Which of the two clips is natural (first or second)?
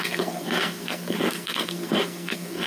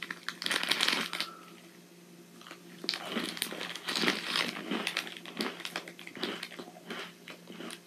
second